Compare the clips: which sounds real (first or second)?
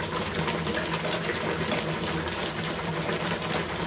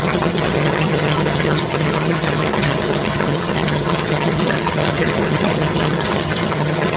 first